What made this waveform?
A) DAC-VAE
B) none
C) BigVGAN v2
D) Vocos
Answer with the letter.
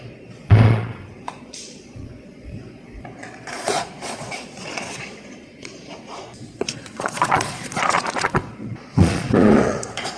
D